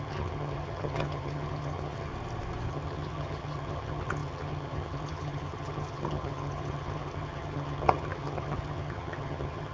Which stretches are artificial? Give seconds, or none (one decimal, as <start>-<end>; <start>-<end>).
0.0-2.1; 2.7-9.7